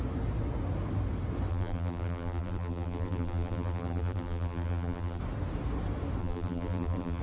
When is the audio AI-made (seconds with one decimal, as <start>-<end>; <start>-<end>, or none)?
1.5-5.2; 6.2-7.2